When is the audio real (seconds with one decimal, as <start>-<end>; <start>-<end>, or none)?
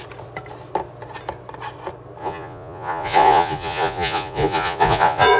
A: 0.0-2.2